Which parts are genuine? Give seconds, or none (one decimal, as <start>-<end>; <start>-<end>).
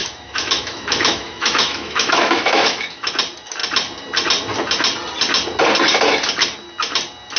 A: 3.1-7.4